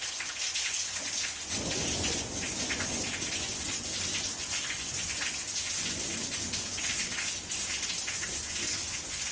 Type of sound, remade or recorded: remade